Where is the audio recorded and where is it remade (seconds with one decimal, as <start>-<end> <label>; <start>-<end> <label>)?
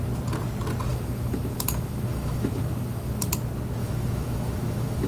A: 0.0-0.9 recorded; 0.9-3.3 remade; 3.3-3.8 recorded; 3.8-5.1 remade